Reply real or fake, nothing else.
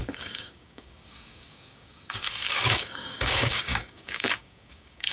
fake